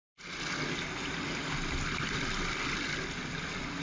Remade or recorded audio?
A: recorded